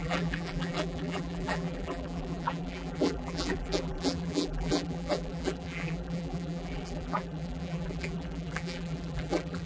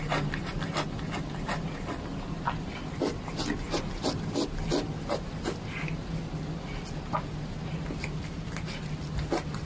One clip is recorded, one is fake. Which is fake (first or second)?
first